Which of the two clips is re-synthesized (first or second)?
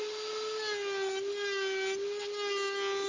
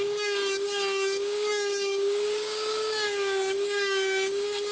second